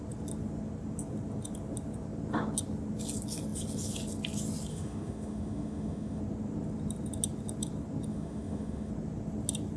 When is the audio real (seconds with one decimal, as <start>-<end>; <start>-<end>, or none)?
0.0-4.7; 6.2-8.1; 8.9-9.8